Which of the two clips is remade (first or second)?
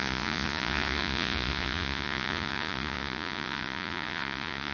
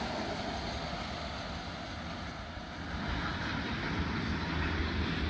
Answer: first